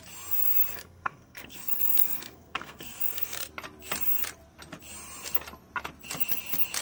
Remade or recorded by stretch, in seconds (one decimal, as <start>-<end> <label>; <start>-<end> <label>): 0.0-0.7 recorded; 0.7-3.5 remade; 3.5-6.8 recorded